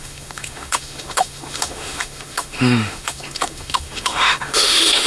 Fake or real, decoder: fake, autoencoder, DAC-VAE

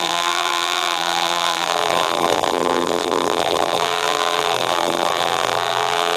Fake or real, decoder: fake, vocoder, BigVGAN v2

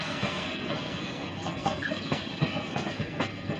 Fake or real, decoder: fake, codec, SNAC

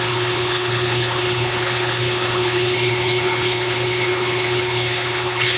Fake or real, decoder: fake, codec, HILCodec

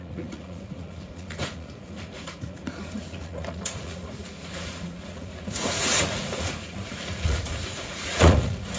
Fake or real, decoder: fake, vocoder, Vocos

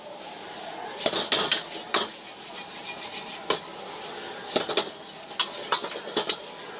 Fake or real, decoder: real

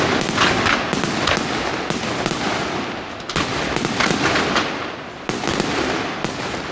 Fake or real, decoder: real